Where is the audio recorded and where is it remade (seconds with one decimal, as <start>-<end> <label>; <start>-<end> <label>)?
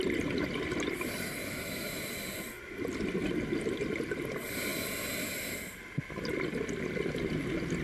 0.0-1.4 recorded; 1.4-2.0 remade; 2.0-7.8 recorded